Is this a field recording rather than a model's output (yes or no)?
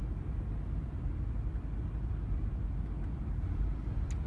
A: yes